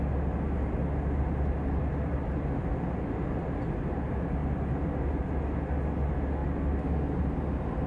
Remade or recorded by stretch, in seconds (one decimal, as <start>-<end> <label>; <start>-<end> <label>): 0.0-7.9 recorded